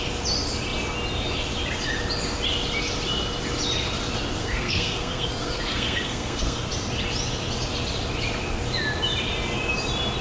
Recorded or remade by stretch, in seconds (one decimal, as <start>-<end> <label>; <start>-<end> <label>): 0.0-4.4 recorded; 4.4-6.7 remade; 6.7-10.2 recorded